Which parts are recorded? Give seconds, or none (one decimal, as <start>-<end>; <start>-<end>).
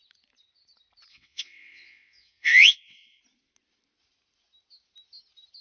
0.0-1.1; 3.2-5.6